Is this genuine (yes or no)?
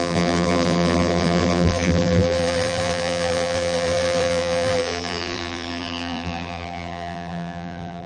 no